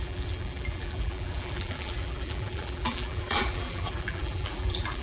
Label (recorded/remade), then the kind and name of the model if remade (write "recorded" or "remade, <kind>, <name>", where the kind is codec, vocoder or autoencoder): remade, vocoder, BigVGAN v2